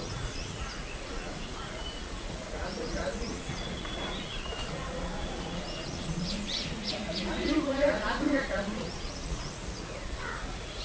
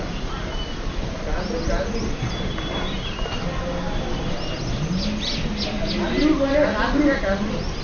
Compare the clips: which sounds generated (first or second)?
first